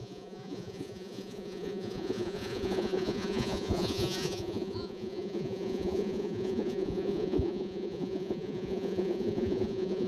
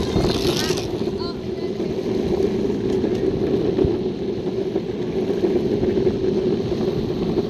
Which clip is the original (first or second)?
second